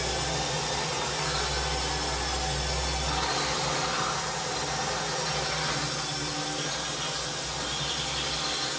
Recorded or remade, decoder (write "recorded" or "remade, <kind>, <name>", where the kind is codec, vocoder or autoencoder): recorded